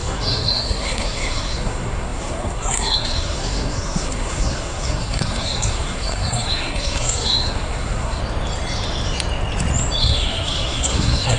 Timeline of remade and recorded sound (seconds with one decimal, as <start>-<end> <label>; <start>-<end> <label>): 0.0-8.2 remade; 8.2-10.0 recorded; 10.0-11.4 remade